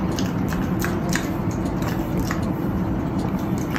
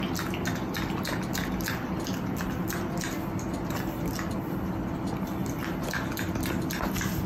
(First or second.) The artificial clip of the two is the first